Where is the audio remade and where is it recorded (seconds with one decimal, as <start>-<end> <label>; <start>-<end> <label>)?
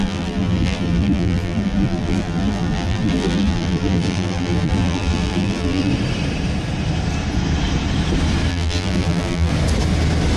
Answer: 0.0-5.9 remade; 5.9-8.5 recorded; 8.5-9.5 remade; 9.5-10.4 recorded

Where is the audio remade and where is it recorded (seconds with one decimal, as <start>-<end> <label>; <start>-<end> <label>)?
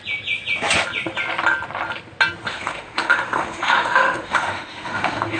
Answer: 0.0-2.5 recorded; 2.5-5.4 remade